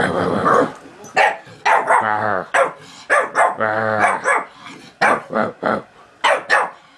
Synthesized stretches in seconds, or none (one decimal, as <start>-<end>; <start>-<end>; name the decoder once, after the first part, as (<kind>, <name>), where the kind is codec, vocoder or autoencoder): none